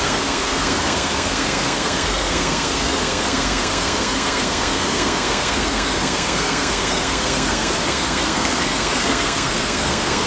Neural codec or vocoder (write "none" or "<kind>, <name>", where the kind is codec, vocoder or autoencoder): codec, SNAC